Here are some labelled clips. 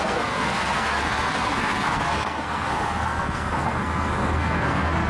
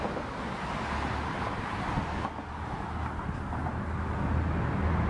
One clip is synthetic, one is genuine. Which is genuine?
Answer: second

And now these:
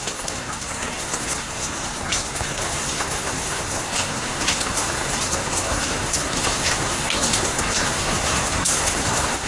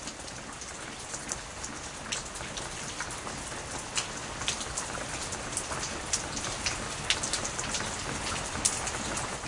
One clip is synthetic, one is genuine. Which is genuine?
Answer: second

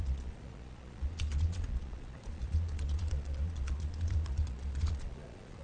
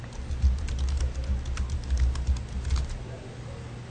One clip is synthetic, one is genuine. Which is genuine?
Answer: second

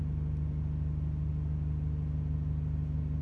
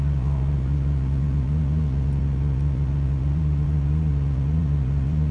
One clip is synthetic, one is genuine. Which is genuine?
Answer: first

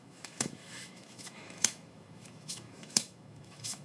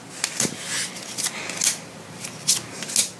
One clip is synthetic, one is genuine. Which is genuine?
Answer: second